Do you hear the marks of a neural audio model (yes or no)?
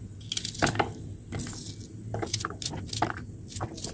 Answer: no